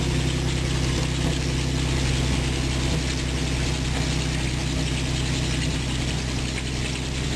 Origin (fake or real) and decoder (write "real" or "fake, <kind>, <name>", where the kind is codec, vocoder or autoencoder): real